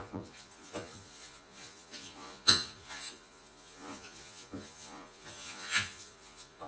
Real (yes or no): no